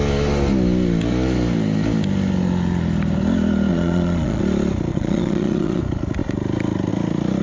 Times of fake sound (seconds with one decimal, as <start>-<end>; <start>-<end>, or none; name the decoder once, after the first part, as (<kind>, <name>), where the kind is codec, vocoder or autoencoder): 3.7-4.4 (vocoder, Vocos); 4.9-5.8